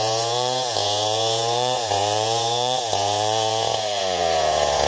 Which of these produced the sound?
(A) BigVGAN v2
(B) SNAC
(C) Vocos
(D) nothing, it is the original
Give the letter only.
C